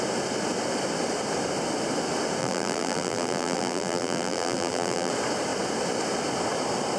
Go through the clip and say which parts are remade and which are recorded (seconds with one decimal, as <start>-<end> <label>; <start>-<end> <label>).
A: 0.0-2.4 recorded; 2.4-5.1 remade; 5.1-7.0 recorded